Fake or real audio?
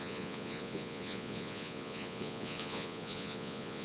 fake